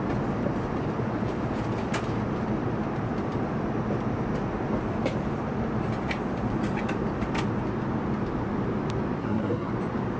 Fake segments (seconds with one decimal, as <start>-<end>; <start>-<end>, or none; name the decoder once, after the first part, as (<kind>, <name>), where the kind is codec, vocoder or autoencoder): 9.2-9.7 (codec, SNAC)

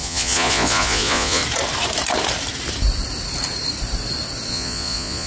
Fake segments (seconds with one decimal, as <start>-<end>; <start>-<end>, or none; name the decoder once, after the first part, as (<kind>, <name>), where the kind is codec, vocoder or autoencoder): 0.0-1.4 (vocoder, Vocos); 4.5-5.3